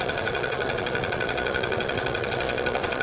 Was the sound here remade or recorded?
remade